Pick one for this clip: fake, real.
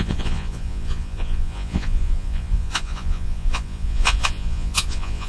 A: fake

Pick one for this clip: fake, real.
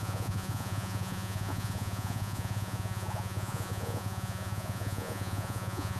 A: fake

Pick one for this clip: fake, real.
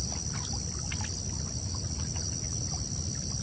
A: real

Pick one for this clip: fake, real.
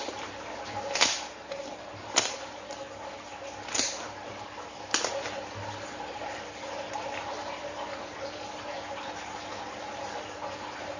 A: real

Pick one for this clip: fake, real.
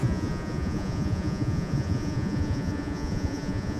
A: fake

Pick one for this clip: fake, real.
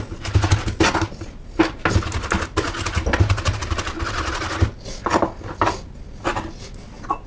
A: real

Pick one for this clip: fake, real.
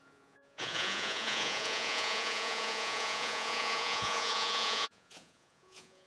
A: fake